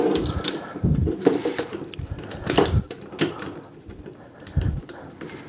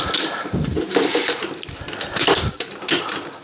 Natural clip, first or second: second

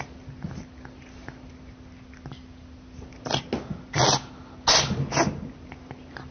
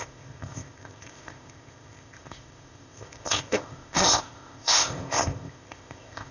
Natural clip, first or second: first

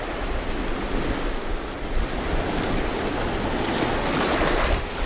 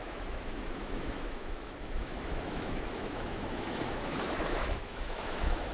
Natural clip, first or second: first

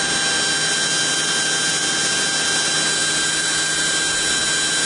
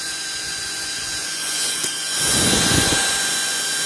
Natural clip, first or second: first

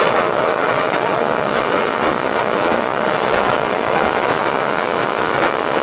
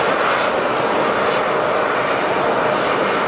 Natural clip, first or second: second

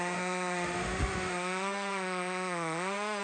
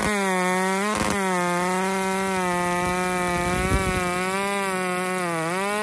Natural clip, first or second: second